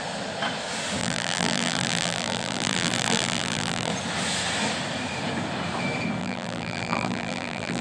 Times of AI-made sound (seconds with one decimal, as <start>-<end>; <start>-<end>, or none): 1.0-3.9; 6.2-7.8